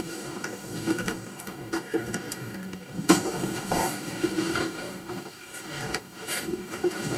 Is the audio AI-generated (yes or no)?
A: yes